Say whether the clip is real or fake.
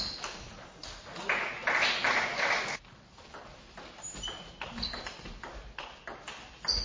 real